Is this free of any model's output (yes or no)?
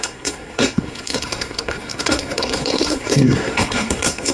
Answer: no